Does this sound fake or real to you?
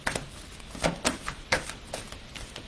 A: real